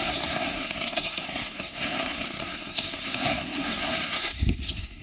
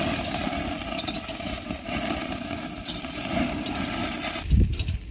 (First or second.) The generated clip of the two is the first